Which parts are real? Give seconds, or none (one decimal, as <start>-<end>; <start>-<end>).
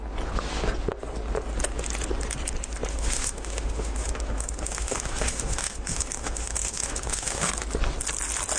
0.0-2.9; 7.5-8.6